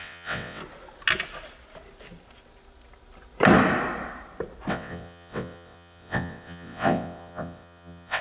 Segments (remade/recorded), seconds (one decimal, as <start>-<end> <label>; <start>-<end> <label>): 0.0-0.6 remade; 0.6-4.7 recorded; 4.7-8.2 remade